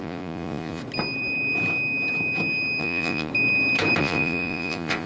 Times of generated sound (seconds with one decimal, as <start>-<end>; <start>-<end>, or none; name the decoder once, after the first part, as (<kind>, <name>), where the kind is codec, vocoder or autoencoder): 0.0-0.8 (vocoder, Vocos); 2.8-3.3; 4.0-5.1